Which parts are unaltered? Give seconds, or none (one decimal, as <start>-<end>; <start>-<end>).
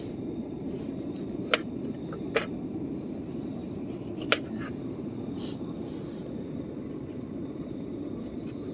0.0-8.7